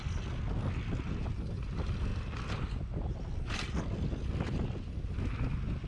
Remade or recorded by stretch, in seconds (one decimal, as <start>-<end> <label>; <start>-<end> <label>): 0.0-5.9 recorded